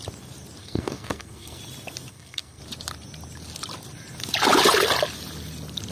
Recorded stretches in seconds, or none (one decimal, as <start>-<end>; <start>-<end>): 0.0-0.6; 1.6-2.1; 2.6-5.9